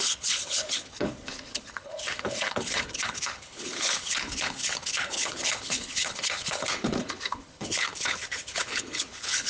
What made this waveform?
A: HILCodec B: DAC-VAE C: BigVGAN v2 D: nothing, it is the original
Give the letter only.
A